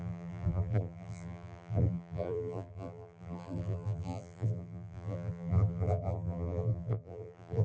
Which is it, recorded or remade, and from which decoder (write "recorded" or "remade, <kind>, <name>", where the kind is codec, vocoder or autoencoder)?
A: remade, vocoder, BigVGAN v2